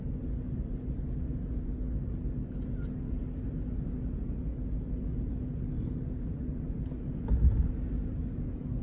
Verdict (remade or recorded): recorded